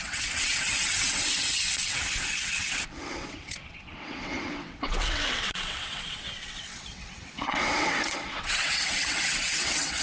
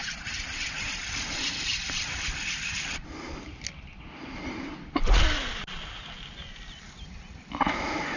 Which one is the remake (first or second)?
first